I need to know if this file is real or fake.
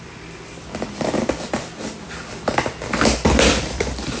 fake